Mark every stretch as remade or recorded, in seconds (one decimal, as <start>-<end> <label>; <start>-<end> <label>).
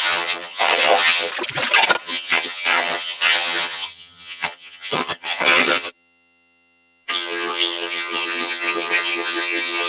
0.0-1.3 remade; 1.3-2.0 recorded; 2.0-9.9 remade